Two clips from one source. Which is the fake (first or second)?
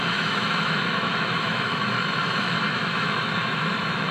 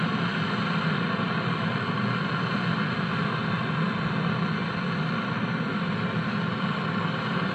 first